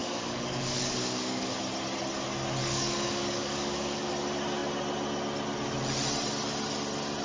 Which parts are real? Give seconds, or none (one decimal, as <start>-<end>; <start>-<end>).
1.5-2.6; 4.1-7.2